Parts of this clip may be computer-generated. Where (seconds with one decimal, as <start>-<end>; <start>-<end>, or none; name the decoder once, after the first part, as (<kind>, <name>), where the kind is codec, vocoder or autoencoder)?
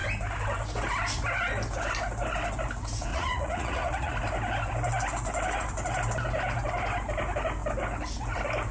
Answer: 3.1-4.1 (vocoder, Vocos)